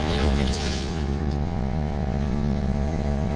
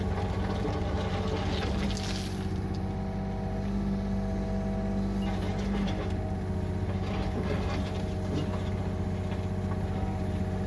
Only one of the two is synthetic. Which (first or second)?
first